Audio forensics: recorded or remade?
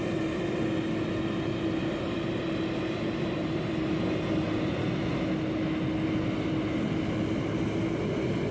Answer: recorded